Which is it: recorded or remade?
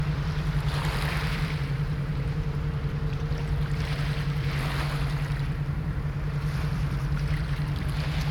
remade